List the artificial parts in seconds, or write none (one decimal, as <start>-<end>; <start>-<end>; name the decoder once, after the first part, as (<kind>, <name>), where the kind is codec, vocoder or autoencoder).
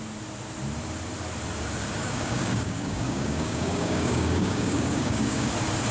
2.0-5.5 (codec, DAC)